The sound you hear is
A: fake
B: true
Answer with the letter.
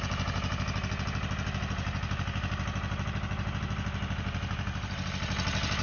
B